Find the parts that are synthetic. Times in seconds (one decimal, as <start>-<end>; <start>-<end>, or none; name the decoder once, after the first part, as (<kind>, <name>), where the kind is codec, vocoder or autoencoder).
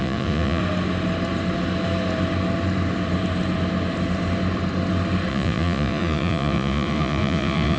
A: 0.0-0.6 (vocoder, Vocos); 5.3-7.8